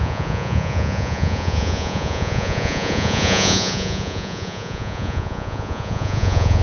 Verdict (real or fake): fake